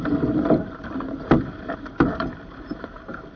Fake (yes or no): no